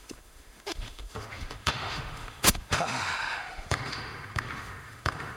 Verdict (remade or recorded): remade